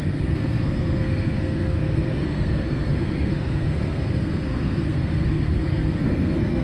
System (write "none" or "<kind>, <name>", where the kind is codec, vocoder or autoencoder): codec, SNAC